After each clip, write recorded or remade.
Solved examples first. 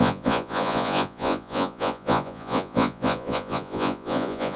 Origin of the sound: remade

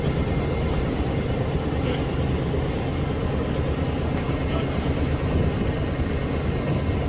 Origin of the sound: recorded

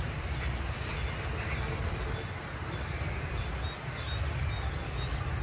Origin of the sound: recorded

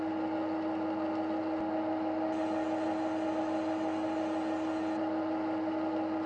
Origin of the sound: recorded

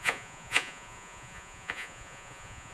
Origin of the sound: remade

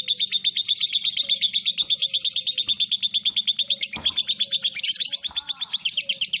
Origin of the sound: recorded